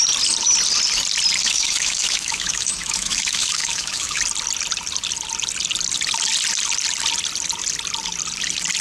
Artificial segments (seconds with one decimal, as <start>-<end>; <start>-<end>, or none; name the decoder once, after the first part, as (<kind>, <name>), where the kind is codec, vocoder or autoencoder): 1.4-4.2 (autoencoder, DAC-VAE)